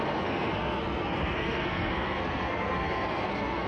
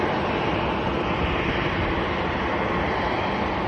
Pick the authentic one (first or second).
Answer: second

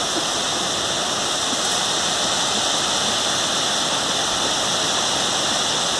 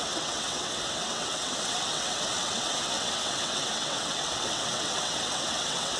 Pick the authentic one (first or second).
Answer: first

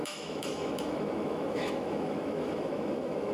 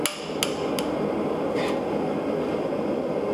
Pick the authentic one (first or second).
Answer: second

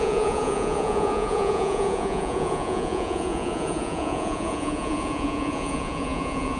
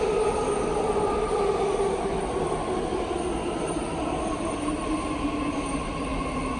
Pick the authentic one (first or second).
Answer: second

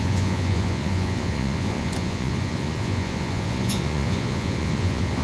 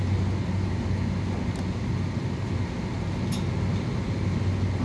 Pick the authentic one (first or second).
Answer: second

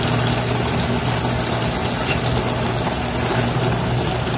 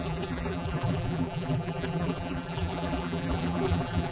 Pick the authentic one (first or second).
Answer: first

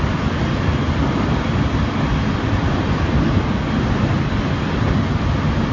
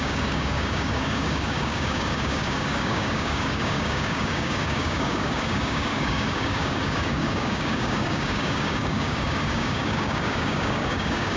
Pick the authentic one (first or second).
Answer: first